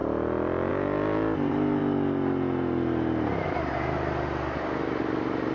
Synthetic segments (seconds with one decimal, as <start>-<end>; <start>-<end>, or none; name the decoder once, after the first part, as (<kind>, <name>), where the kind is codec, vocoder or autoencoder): none